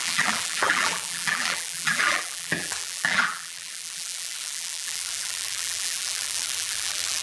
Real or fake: fake